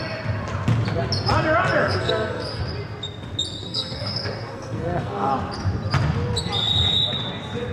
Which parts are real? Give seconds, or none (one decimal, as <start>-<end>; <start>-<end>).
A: 0.0-1.8; 2.6-3.6; 5.3-7.7